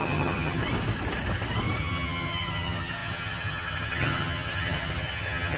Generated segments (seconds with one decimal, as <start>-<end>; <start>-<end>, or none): 0.0-0.6; 1.8-5.6